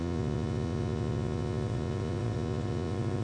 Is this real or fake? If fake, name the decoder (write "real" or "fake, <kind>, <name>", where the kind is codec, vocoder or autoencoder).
fake, vocoder, Vocos